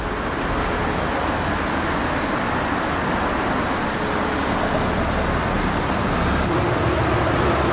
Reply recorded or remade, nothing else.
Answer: recorded